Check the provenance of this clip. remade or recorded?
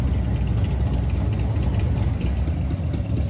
recorded